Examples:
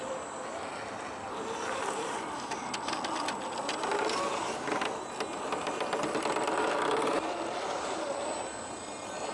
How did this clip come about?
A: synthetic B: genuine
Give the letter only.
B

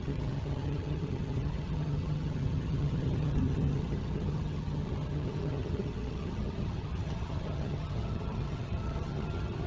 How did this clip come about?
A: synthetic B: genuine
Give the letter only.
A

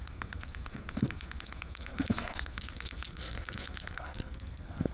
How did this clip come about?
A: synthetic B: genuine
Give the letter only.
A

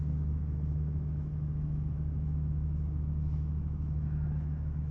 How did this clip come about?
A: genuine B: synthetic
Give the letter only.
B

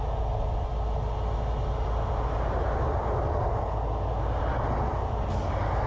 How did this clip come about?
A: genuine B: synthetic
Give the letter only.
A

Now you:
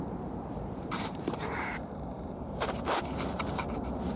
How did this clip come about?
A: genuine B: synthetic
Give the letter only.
B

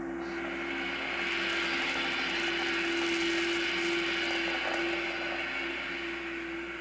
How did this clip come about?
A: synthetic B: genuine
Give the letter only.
B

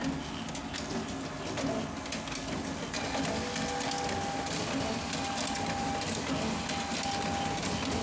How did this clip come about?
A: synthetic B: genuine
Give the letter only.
B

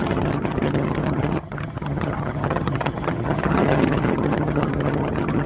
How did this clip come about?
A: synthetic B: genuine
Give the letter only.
A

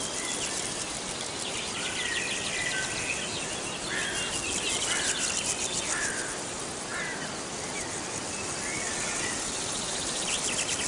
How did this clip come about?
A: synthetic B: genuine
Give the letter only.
B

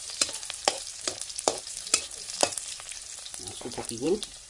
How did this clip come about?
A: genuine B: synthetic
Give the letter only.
B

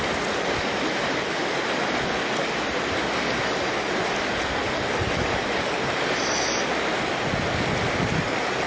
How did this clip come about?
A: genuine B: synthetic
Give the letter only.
A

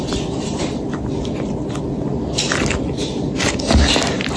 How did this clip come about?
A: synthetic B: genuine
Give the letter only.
B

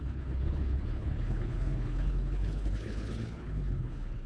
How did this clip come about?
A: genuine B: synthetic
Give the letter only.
B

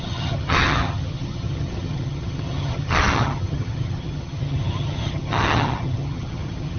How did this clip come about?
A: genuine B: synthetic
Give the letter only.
B